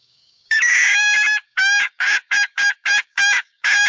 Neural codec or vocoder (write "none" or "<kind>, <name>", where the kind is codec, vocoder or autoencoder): codec, DAC